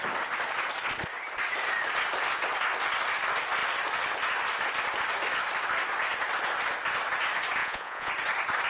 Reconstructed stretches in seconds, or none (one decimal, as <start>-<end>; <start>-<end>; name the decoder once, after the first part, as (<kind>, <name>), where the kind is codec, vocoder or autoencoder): 7.6-8.1 (vocoder, Vocos)